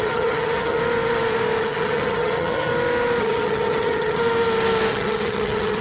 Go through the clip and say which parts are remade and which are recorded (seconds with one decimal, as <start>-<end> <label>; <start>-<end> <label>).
0.0-0.8 remade; 0.8-1.6 recorded; 1.6-2.7 remade; 2.7-3.2 recorded; 3.2-4.2 remade; 4.2-4.9 recorded; 4.9-5.8 remade